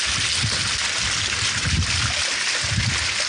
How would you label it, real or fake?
real